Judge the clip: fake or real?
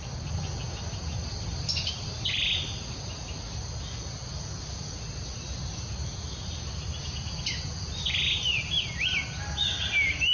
real